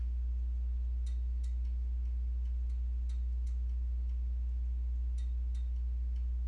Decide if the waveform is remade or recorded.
recorded